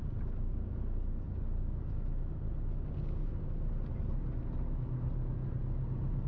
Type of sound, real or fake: real